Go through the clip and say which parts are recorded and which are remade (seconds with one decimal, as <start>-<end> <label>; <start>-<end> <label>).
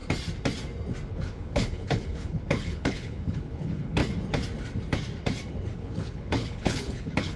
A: 0.0-1.1 recorded; 1.1-4.0 remade; 4.0-5.5 recorded; 5.5-7.4 remade